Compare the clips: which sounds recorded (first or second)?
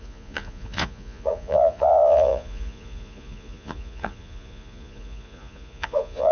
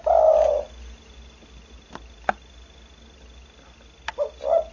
second